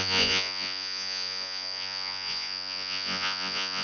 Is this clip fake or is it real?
fake